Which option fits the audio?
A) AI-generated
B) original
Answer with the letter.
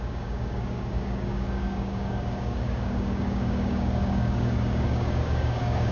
A